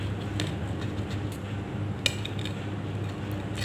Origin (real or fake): real